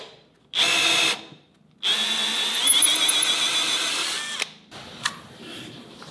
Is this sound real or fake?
real